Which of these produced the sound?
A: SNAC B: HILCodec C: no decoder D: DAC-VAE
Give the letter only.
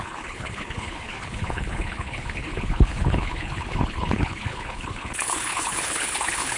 B